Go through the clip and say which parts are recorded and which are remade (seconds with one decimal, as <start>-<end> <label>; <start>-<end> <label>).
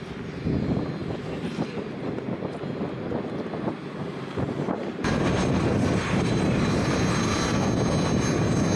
0.0-4.0 recorded; 4.0-6.9 remade; 6.9-8.8 recorded